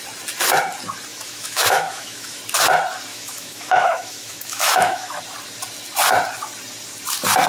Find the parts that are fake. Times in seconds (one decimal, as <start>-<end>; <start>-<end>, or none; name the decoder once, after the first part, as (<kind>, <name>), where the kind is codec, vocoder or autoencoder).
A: 1.1-2.4 (autoencoder, DAC-VAE); 3.1-5.2

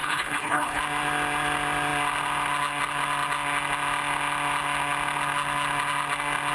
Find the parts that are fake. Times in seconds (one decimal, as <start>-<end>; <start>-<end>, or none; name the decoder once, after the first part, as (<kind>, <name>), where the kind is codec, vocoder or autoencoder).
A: 0.0-0.8 (codec, HILCodec)

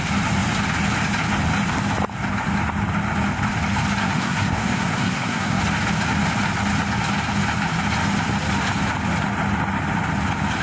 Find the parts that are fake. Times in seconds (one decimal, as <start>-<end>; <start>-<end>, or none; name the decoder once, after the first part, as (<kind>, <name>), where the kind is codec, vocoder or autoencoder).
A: 4.0-5.6 (codec, SNAC)

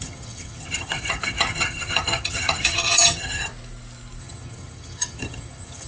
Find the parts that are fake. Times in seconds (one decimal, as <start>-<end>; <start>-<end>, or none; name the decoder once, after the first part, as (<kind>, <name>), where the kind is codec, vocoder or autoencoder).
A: 0.0-3.5 (vocoder, HiFi-GAN); 4.2-5.9

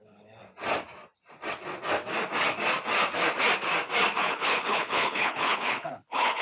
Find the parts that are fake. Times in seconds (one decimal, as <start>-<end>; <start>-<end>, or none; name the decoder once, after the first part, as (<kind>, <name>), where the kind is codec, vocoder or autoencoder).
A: 0.0-0.4 (codec, HILCodec); 4.2-6.4

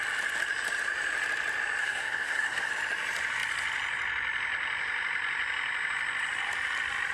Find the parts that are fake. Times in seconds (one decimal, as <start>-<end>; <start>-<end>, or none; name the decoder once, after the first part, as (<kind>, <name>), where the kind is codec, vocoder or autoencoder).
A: 1.8-2.7 (codec, SNAC)